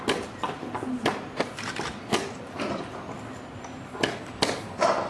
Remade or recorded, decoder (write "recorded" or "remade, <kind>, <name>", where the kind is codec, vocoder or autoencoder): recorded